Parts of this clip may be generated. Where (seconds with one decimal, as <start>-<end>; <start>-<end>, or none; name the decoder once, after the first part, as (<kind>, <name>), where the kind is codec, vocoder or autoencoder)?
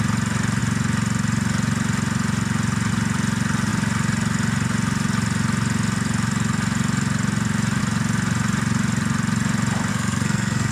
9.9-10.7 (codec, SNAC)